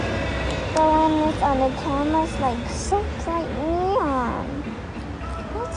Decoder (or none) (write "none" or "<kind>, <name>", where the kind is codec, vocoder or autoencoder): none